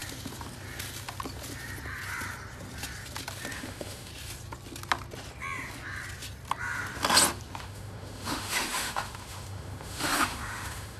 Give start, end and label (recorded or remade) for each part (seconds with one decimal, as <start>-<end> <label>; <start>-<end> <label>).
0.0-3.5 recorded; 3.5-4.1 remade; 4.1-7.6 recorded; 7.6-11.0 remade